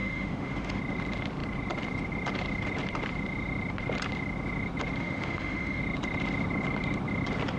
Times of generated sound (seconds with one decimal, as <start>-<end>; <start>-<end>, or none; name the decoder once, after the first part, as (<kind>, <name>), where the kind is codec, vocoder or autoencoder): 0.0-0.8 (autoencoder, DAC-VAE); 5.0-5.8